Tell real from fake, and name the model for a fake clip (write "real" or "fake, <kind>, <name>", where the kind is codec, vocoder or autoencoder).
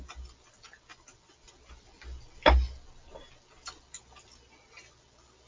real